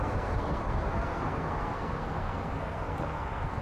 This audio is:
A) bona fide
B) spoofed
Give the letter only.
B